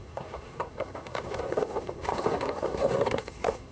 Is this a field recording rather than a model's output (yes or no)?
no